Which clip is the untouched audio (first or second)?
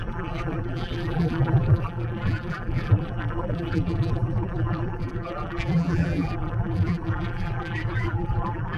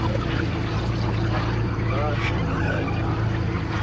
second